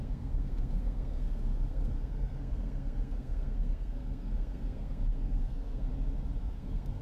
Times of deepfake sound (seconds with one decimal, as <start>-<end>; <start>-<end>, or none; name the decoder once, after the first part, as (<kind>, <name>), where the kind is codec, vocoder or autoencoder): 0.0-5.9 (codec, SNAC); 6.4-7.0